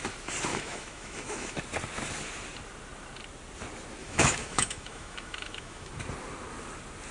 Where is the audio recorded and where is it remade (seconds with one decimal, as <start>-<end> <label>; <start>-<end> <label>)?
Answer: 0.0-0.5 recorded; 0.5-1.6 remade; 1.6-4.0 recorded; 4.0-5.9 remade; 5.9-7.1 recorded